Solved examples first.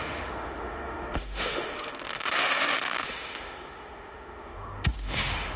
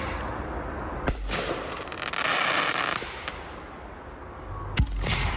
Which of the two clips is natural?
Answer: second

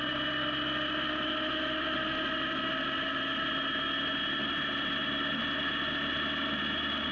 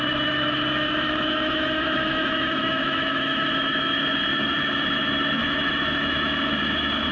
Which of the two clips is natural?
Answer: first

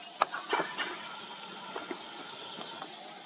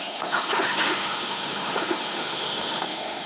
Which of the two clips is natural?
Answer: first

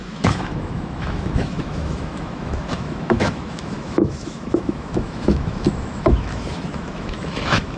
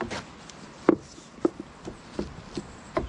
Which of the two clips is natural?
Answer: second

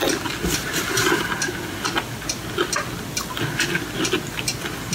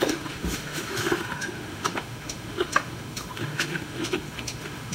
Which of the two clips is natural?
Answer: first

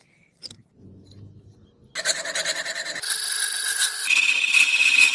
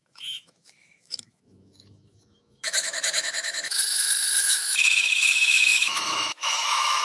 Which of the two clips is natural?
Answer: first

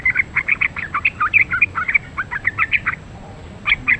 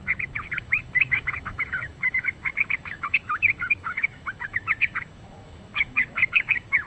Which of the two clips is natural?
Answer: first